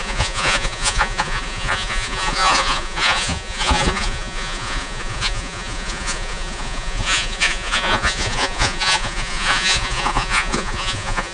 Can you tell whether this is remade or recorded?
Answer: remade